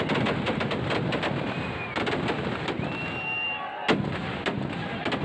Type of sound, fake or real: real